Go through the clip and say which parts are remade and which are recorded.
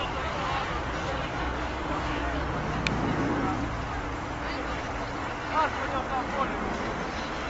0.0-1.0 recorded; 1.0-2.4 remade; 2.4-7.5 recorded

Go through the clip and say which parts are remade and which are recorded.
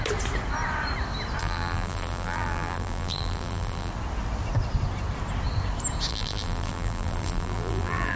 0.0-1.4 recorded; 1.4-3.9 remade; 3.9-6.1 recorded; 6.1-8.2 remade